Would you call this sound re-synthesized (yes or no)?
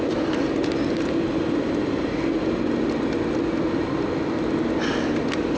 no